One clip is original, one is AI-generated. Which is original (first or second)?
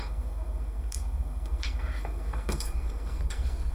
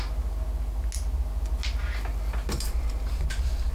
second